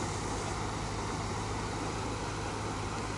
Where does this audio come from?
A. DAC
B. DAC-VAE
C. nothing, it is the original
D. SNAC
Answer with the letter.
C